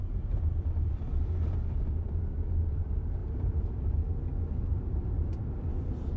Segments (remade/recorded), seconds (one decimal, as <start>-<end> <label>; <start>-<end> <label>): 0.0-0.9 remade; 0.9-3.2 recorded; 3.2-3.9 remade; 3.9-4.7 recorded; 4.7-5.3 remade; 5.3-6.2 recorded